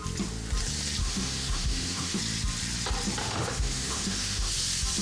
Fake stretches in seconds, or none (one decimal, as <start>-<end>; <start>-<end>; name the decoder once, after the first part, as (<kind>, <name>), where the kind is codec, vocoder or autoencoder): 1.0-2.2 (autoencoder, DAC-VAE); 3.2-4.5